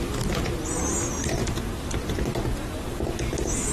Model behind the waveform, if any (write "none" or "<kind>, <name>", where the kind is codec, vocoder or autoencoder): none